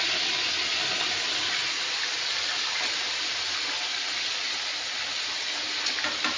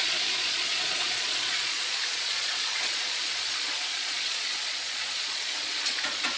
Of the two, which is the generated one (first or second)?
second